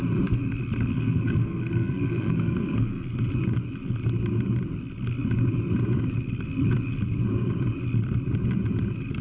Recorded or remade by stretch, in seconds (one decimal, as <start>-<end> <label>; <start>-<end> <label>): 0.0-0.9 recorded; 0.9-3.1 remade; 3.1-9.2 recorded